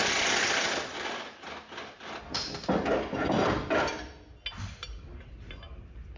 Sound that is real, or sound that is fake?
real